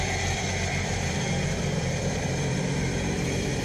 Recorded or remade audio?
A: remade